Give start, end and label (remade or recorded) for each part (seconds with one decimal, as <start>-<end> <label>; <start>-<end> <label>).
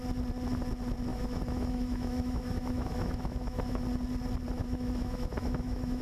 0.0-1.1 recorded; 1.1-3.8 remade; 3.8-4.6 recorded; 4.6-6.0 remade